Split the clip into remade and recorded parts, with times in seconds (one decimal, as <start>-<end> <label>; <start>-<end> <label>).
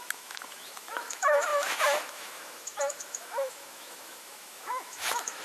0.0-5.4 remade